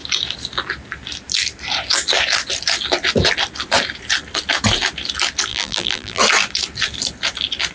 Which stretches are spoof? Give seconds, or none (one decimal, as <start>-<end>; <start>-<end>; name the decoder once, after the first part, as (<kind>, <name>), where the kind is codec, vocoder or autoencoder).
5.5-6.2 (vocoder, BigVGAN v2)